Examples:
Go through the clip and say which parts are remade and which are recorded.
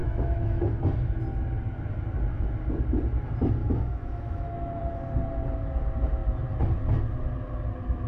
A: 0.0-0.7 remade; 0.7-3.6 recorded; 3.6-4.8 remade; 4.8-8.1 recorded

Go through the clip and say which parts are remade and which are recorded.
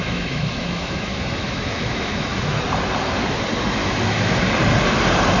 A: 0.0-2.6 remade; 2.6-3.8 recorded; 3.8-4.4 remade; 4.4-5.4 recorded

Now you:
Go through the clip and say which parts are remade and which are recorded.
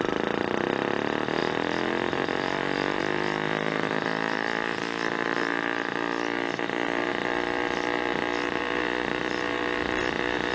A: 0.0-10.5 remade